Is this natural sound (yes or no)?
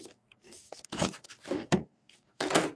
no